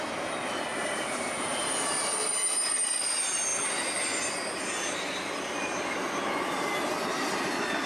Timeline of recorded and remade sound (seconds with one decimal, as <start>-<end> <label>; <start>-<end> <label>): 0.0-0.7 recorded; 0.7-1.9 remade; 1.9-7.9 recorded